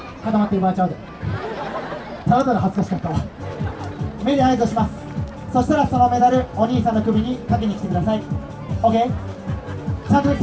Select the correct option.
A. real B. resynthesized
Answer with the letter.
A